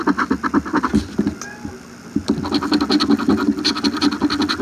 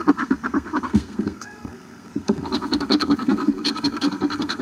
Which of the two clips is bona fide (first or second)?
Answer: first